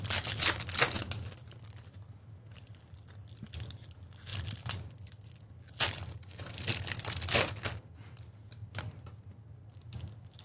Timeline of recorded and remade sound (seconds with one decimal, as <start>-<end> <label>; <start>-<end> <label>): 0.0-10.4 recorded